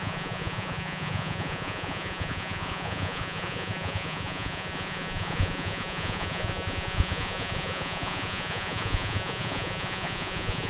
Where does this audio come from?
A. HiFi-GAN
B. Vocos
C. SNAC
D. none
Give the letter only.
B